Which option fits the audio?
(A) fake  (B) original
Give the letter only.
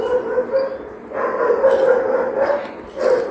B